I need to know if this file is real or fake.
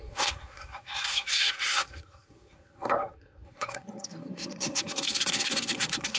fake